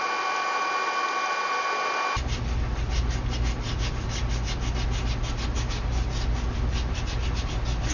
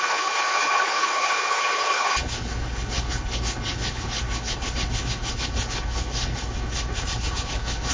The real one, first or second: first